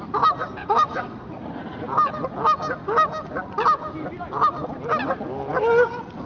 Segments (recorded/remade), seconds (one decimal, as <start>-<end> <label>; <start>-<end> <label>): 0.0-0.6 recorded; 0.6-1.5 remade; 1.5-6.3 recorded